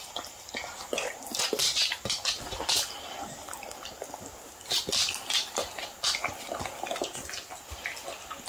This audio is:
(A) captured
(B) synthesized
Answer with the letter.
A